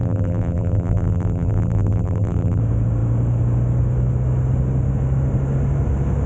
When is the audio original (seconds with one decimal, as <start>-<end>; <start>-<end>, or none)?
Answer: 2.6-6.3